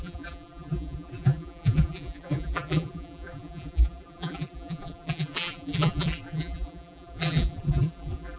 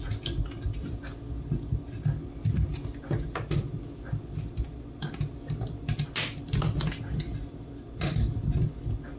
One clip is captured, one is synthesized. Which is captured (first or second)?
second